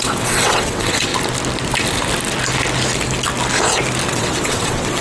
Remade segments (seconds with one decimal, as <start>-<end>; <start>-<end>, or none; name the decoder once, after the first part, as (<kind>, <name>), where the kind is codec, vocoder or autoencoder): 0.0-1.1 (vocoder, WaveNeXt); 4.1-5.0